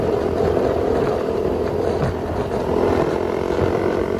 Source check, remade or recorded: remade